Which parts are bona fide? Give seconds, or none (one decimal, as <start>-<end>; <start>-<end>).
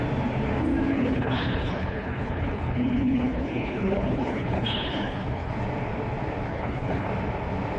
0.0-0.9; 5.5-6.5; 7.1-7.8